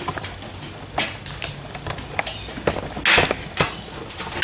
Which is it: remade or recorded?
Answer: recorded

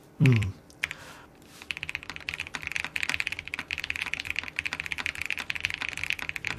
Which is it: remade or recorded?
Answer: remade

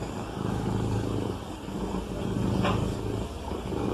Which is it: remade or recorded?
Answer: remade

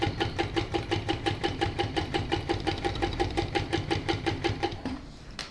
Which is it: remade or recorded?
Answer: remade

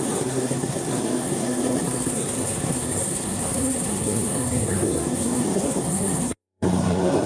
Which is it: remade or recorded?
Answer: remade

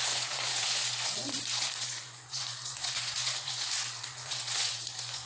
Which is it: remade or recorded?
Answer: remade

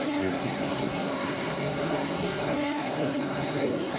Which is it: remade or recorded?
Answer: remade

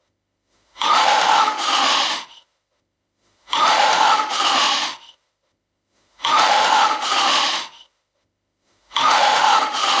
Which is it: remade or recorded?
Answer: remade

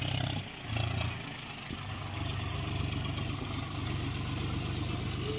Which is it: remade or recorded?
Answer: recorded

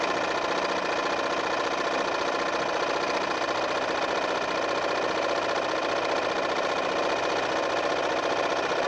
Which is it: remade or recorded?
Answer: recorded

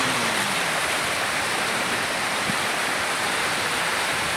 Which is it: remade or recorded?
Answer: remade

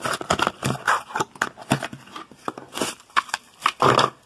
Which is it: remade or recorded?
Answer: remade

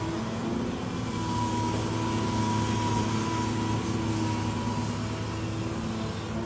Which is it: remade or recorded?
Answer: recorded